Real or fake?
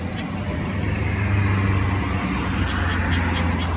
real